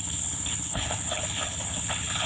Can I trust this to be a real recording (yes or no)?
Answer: no